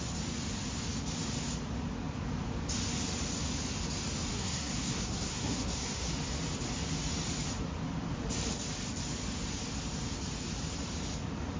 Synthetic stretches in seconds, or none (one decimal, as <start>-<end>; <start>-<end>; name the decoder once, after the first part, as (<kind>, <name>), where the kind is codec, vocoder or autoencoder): 4.3-6.1 (codec, SNAC)